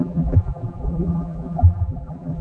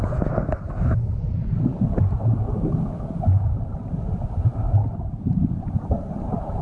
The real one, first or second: second